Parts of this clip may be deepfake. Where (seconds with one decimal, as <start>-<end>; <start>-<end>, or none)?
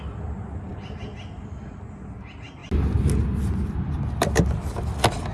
none